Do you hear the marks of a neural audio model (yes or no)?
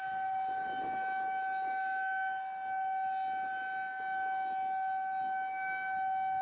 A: no